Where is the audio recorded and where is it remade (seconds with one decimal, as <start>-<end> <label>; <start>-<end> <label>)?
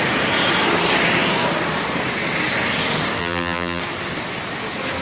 0.0-3.2 recorded; 3.2-3.8 remade; 3.8-5.0 recorded